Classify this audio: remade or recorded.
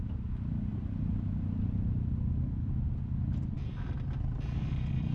recorded